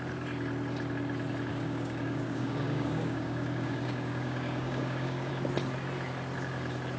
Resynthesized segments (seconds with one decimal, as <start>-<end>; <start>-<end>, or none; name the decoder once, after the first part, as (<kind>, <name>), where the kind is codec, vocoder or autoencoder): 1.5-5.3 (codec, DAC)